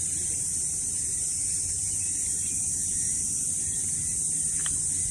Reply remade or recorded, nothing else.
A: remade